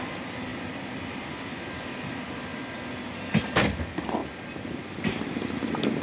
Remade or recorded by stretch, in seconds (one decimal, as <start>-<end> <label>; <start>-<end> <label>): 0.0-6.0 recorded